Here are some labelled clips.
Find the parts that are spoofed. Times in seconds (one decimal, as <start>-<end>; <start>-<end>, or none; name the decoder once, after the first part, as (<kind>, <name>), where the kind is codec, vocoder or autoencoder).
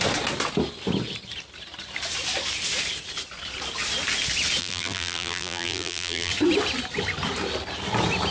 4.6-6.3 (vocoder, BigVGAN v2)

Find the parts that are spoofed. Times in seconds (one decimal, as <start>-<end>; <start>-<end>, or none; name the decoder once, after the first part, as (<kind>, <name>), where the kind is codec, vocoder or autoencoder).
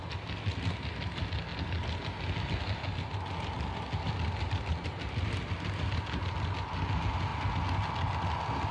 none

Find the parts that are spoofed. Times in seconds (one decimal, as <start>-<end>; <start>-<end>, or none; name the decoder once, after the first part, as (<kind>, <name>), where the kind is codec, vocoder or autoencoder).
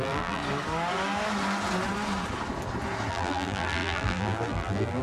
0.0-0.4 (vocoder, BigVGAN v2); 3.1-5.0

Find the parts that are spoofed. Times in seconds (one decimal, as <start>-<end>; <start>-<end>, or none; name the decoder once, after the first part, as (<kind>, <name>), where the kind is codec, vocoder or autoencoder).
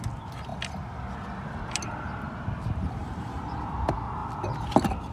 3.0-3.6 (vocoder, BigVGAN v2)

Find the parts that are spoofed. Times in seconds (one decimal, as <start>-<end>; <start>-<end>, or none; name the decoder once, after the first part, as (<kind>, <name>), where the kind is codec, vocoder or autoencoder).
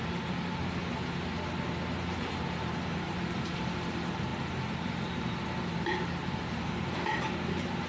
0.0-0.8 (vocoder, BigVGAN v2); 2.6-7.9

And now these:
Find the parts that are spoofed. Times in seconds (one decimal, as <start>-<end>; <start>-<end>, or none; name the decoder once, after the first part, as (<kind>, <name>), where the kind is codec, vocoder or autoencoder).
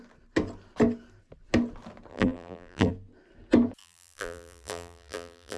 2.1-2.9 (vocoder, BigVGAN v2); 3.8-5.6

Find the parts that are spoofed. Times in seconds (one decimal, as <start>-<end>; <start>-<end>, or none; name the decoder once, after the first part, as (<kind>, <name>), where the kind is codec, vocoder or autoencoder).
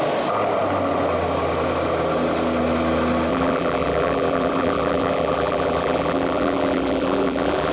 3.3-7.7 (vocoder, BigVGAN v2)